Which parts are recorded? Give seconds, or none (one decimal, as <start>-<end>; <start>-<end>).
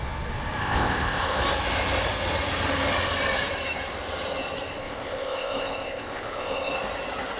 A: 0.0-0.6; 1.4-4.8; 6.7-7.4